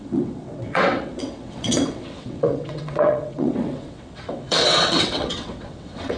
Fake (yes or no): yes